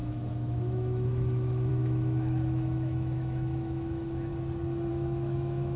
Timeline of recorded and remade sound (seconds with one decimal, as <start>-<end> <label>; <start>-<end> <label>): 0.0-4.3 remade; 4.3-4.9 recorded; 4.9-5.8 remade